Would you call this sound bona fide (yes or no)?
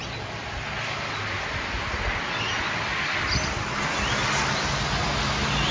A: yes